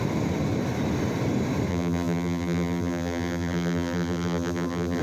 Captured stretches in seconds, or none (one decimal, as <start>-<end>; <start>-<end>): 0.0-1.7